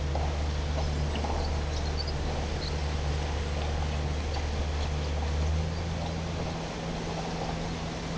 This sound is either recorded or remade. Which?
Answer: recorded